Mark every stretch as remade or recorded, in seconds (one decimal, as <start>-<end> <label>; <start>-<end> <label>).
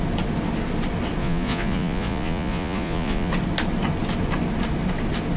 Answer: 0.0-1.2 recorded; 1.2-3.3 remade; 3.3-5.4 recorded